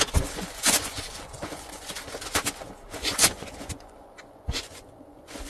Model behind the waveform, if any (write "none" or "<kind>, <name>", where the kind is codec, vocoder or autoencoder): vocoder, Vocos